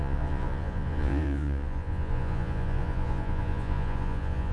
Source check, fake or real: fake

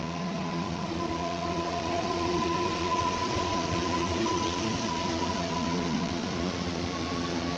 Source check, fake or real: fake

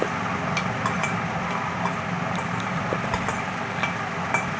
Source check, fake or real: real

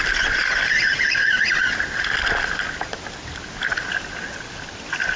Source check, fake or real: real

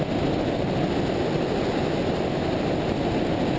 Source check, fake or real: real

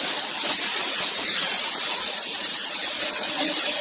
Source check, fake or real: fake